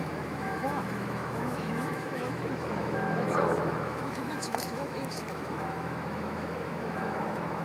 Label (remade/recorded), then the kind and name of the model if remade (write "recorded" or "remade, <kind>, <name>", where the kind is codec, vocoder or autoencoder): remade, autoencoder, DAC-VAE